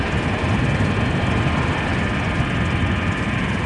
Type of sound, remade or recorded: recorded